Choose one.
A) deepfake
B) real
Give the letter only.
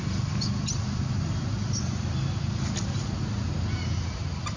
B